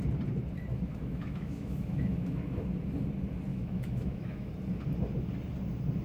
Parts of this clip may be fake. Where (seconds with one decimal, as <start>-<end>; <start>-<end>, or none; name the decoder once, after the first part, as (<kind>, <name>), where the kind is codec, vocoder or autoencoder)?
0.7-2.7 (autoencoder, DAC-VAE); 3.5-4.5